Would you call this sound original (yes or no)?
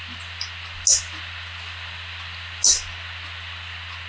yes